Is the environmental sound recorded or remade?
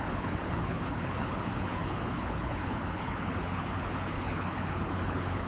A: remade